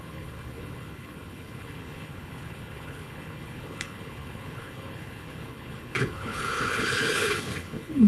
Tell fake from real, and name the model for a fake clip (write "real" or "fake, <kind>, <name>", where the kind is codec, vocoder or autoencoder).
fake, codec, HILCodec